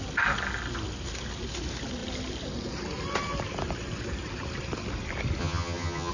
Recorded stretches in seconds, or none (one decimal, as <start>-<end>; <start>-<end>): 0.0-5.4